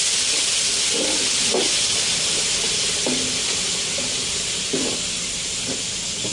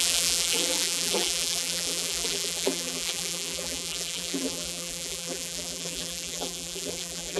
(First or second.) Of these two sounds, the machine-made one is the second